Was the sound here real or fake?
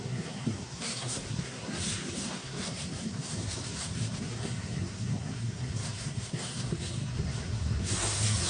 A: fake